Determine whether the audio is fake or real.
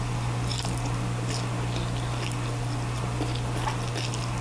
real